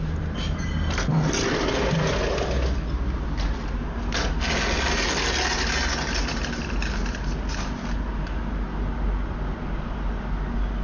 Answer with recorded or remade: recorded